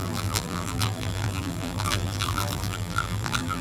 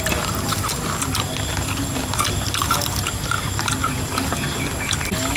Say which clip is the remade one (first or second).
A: first